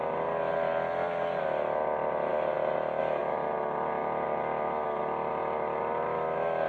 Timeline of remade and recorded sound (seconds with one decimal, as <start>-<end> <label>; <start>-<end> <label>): 0.0-6.7 recorded